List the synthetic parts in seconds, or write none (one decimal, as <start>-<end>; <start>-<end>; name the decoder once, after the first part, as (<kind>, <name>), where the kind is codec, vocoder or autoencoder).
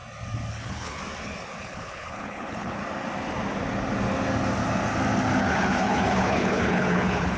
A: 0.5-1.0 (codec, HILCodec); 1.6-2.8; 5.4-7.4